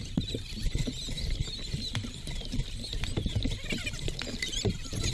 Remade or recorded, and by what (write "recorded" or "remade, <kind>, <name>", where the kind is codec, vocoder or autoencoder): recorded